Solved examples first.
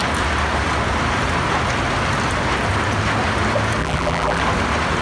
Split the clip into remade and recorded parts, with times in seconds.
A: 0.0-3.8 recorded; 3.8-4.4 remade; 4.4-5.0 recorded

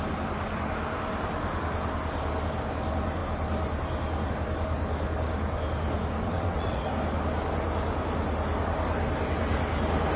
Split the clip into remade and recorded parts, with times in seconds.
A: 0.0-6.2 recorded; 6.2-6.9 remade; 6.9-10.2 recorded

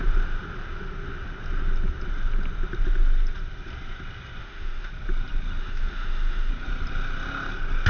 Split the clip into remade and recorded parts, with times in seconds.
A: 0.0-4.4 recorded; 4.4-4.9 remade; 4.9-5.6 recorded; 5.6-6.5 remade; 6.5-7.9 recorded

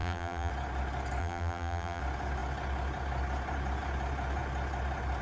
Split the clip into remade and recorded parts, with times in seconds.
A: 0.0-0.5 remade; 0.5-1.2 recorded; 1.2-2.0 remade; 2.0-5.2 recorded

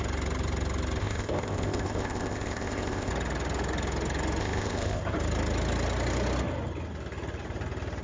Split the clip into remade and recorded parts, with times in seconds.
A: 0.0-1.0 recorded; 1.0-3.1 remade; 3.1-4.4 recorded; 4.4-5.0 remade; 5.0-8.0 recorded

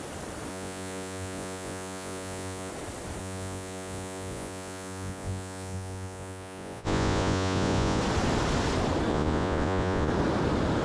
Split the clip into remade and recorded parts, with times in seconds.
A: 0.0-0.5 recorded; 0.5-2.7 remade; 2.7-3.2 recorded; 3.2-8.0 remade; 8.0-9.1 recorded; 9.1-10.1 remade; 10.1-10.8 recorded

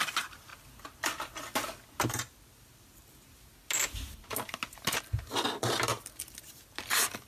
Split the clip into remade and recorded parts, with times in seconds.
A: 0.0-7.3 recorded

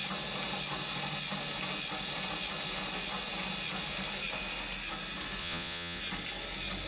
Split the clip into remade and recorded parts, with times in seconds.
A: 0.0-5.4 recorded; 5.4-6.0 remade; 6.0-6.9 recorded